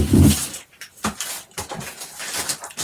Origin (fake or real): real